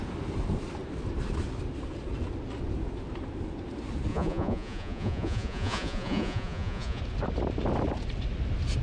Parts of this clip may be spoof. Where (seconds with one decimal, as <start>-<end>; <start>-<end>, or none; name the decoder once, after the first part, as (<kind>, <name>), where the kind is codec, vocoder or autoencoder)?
4.1-7.0 (vocoder, Vocos)